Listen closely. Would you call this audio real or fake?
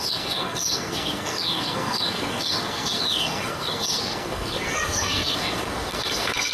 fake